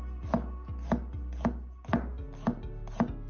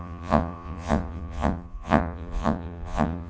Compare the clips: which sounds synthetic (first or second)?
second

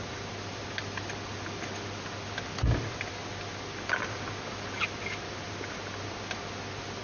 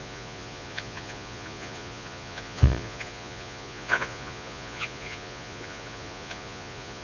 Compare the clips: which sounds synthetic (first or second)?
second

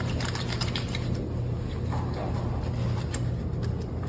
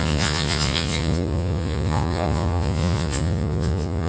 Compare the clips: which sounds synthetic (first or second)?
second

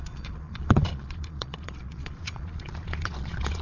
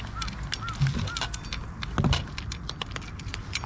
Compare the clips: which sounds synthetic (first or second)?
first